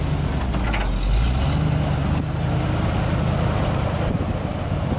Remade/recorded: recorded